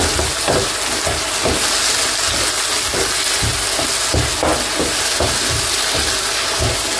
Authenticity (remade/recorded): recorded